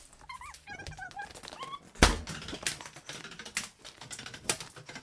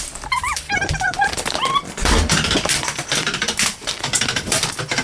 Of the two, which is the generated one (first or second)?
second